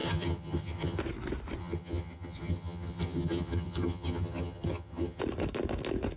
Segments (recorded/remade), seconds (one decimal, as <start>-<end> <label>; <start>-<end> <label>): 0.0-1.0 remade; 1.0-1.6 recorded; 1.6-5.2 remade; 5.2-6.2 recorded